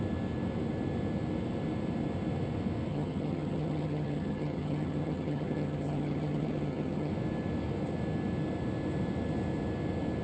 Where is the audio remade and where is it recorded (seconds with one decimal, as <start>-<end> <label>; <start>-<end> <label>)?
0.0-2.9 recorded; 2.9-7.1 remade; 7.1-10.2 recorded